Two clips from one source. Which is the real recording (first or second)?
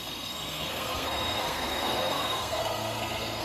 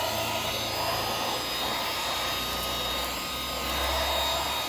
second